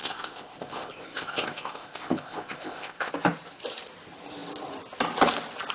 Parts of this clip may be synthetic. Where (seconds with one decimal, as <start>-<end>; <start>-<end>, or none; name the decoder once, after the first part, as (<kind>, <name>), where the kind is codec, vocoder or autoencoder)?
0.0-3.1 (codec, ZipCodec)

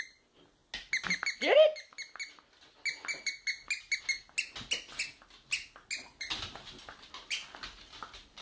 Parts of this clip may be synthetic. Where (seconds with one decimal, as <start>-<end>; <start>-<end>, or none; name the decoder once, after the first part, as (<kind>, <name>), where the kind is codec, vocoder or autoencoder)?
none

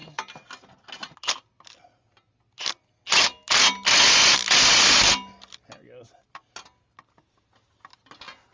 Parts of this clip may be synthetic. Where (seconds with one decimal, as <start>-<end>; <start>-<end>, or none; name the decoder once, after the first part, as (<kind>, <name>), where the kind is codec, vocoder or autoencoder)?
none

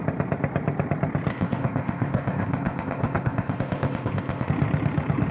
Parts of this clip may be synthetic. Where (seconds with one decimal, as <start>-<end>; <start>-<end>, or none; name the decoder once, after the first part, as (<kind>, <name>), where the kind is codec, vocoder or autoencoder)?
1.3-4.5 (codec, ZipCodec)

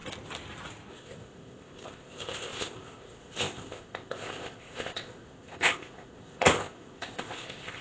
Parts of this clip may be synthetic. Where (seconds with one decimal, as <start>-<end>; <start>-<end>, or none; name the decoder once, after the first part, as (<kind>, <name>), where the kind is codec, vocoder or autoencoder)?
0.9-7.8 (codec, ZipCodec)

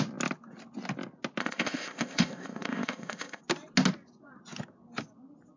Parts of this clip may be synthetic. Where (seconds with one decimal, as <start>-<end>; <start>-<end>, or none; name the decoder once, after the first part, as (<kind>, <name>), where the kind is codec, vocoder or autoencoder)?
1.4-3.4 (codec, ZipCodec)